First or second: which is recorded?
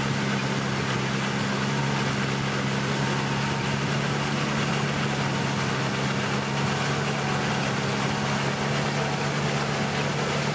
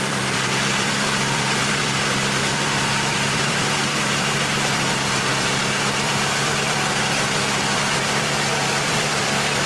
first